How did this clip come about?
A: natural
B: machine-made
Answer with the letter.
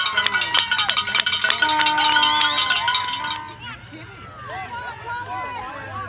A